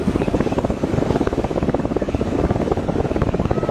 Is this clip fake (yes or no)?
yes